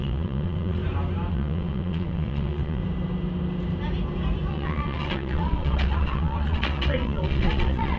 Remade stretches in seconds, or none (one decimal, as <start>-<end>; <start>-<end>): 0.0-0.8; 1.3-2.8; 4.5-8.0

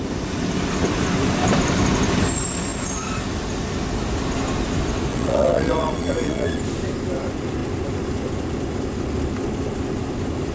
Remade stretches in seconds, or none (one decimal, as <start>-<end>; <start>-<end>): 5.1-6.6

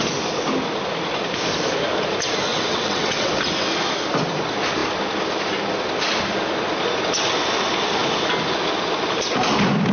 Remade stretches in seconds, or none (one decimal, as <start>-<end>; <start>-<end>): 2.5-3.3

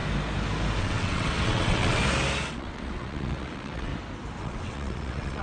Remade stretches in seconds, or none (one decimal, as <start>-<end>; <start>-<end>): 0.8-2.0; 2.5-3.9; 4.4-5.4

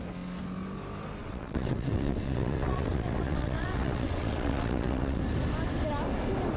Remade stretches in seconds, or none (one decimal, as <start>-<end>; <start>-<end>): 1.2-5.2

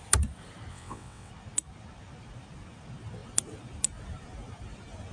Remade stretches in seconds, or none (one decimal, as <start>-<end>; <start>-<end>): 0.7-1.3